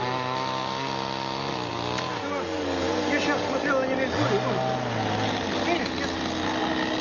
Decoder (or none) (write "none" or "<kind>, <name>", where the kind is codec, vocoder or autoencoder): none